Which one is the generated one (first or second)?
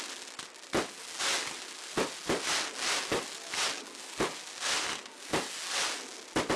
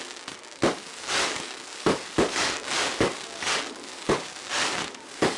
second